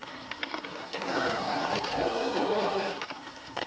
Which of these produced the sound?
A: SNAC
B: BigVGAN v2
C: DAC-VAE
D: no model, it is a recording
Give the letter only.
A